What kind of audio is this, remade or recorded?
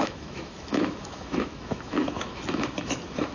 remade